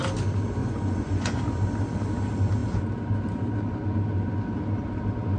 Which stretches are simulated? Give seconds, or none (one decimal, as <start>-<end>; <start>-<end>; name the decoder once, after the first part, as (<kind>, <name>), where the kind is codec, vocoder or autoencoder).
0.6-1.4 (vocoder, Vocos)